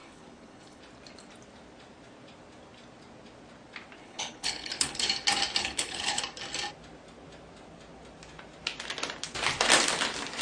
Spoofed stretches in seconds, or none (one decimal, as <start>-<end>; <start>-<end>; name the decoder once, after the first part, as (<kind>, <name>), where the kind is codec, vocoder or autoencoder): 0.0-0.8 (codec, HILCodec); 4.0-5.1; 5.6-6.2